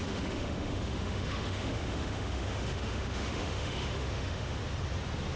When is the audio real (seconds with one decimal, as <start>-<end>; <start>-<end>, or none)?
4.6-5.4